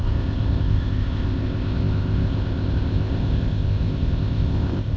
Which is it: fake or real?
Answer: fake